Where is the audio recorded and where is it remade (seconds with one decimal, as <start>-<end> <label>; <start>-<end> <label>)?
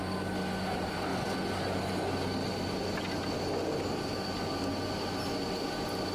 0.0-6.1 recorded